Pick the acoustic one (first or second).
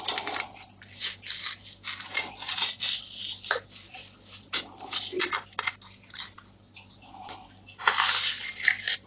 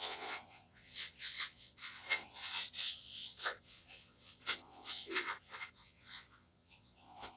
first